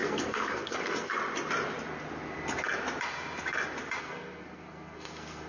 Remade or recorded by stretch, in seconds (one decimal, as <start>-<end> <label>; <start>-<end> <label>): 0.0-1.1 remade; 1.1-4.0 recorded; 4.0-5.5 remade